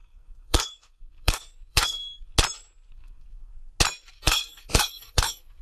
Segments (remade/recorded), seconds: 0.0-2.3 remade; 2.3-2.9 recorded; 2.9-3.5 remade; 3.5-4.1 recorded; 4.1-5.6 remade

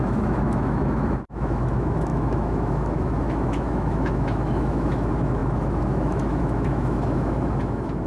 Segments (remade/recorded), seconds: 0.0-8.1 remade

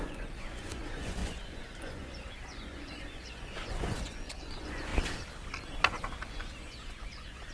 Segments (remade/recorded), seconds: 0.0-4.9 remade; 4.9-6.3 recorded; 6.3-7.5 remade

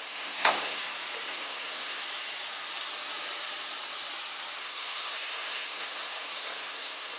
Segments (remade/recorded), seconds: 0.0-0.8 remade; 0.8-1.3 recorded; 1.3-2.0 remade; 2.0-4.6 recorded; 4.6-7.2 remade

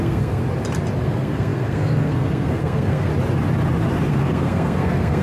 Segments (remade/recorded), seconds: 0.0-0.4 remade; 0.4-1.0 recorded; 1.0-3.1 remade; 3.1-4.1 recorded; 4.1-5.2 remade

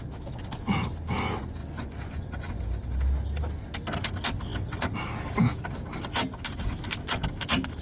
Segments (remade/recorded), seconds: 0.0-1.6 recorded; 1.6-2.6 remade; 2.6-7.8 recorded

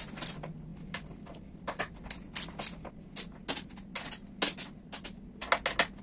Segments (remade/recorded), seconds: 0.0-6.0 recorded